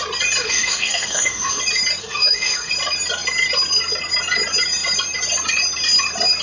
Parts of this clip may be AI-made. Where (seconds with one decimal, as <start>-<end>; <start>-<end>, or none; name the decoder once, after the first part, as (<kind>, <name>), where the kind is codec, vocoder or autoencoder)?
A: 0.4-1.6 (autoencoder, DAC-VAE); 2.0-2.7